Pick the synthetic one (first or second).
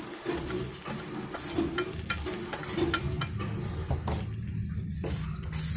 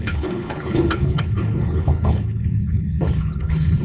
second